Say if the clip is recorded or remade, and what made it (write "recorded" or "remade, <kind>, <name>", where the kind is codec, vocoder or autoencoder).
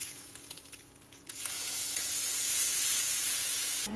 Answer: remade, vocoder, Vocos